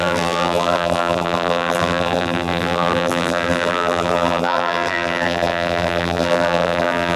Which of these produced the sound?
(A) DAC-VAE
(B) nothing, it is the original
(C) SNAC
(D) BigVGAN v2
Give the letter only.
D